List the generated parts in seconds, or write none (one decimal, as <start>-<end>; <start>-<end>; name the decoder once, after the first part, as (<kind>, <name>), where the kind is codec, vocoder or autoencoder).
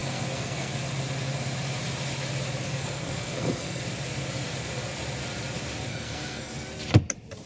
0.0-0.7 (codec, SNAC); 2.6-3.8; 5.9-6.5